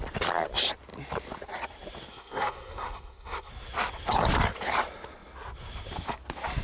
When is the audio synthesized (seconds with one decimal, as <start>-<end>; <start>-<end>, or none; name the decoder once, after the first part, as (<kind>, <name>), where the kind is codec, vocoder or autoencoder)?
2.1-3.5 (codec, SNAC)